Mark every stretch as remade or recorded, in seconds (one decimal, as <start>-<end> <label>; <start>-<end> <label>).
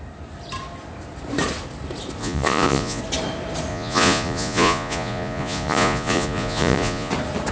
0.0-2.2 recorded; 2.2-3.0 remade; 3.0-3.7 recorded; 3.7-7.1 remade; 7.1-7.5 recorded